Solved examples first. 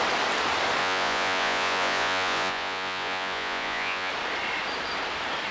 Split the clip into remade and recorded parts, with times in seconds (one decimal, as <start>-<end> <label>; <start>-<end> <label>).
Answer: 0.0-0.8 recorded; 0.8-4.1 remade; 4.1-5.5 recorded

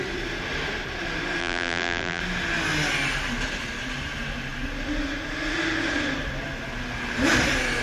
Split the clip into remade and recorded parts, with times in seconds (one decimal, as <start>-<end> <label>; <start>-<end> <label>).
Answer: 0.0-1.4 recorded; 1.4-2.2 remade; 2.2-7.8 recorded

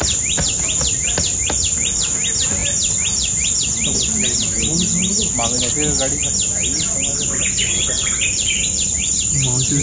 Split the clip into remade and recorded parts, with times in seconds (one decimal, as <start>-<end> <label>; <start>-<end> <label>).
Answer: 0.0-9.8 recorded

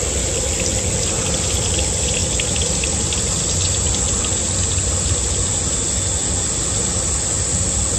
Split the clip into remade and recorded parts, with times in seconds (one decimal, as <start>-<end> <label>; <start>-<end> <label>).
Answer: 0.0-8.0 recorded

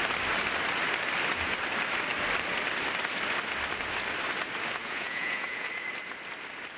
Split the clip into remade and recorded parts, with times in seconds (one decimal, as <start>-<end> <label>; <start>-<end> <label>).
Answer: 0.0-4.8 recorded; 4.8-5.7 remade; 5.7-6.8 recorded

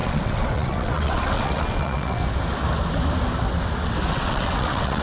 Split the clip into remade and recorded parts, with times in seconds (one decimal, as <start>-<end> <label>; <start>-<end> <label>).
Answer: 0.0-2.2 remade; 2.2-4.1 recorded; 4.1-5.0 remade